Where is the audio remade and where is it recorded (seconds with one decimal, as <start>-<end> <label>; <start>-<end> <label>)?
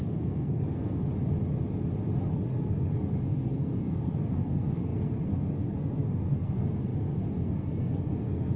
0.0-1.0 remade; 1.0-2.3 recorded; 2.3-8.6 remade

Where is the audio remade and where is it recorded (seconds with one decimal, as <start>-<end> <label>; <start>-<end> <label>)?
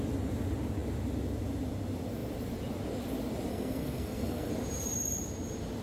0.0-3.5 recorded; 3.5-4.5 remade; 4.5-5.8 recorded